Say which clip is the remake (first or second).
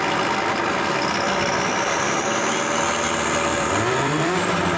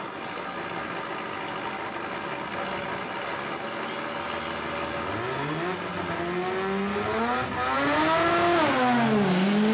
first